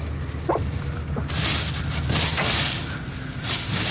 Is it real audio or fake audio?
real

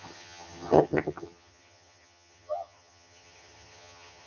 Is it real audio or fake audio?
fake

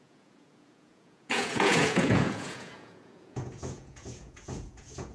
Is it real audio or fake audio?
fake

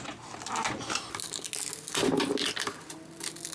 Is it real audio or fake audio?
real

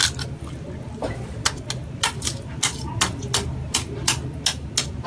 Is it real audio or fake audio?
real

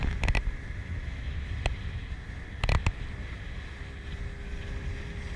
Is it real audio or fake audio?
real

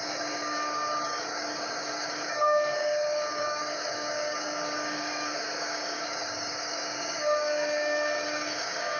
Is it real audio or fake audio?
fake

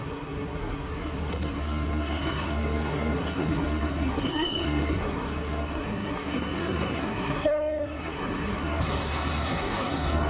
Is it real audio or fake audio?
fake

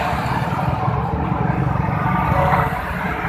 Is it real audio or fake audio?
real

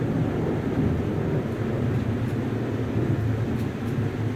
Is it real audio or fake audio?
real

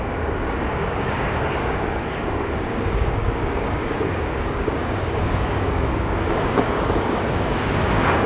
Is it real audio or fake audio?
fake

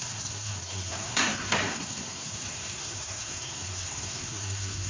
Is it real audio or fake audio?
fake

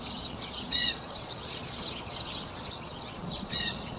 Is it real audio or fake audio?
fake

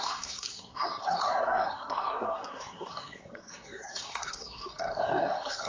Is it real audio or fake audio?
fake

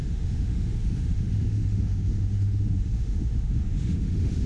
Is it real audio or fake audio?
fake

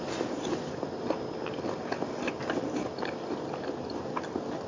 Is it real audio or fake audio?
real